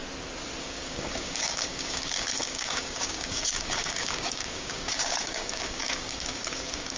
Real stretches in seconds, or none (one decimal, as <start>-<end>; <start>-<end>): 0.0-0.6